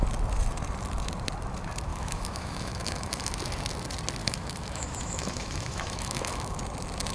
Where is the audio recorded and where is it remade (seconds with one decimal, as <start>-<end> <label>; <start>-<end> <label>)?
0.0-1.9 recorded; 1.9-3.3 remade; 3.3-4.2 recorded; 4.2-6.6 remade; 6.6-7.1 recorded